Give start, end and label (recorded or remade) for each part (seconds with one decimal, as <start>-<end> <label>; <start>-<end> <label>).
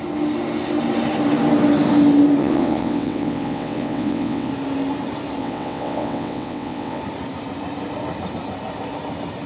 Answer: 0.0-2.4 recorded; 2.4-4.5 remade; 4.5-5.4 recorded; 5.4-7.0 remade; 7.0-9.5 recorded